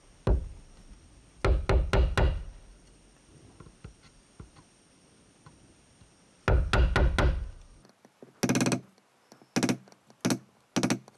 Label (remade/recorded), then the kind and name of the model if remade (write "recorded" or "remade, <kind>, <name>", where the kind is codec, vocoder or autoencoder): recorded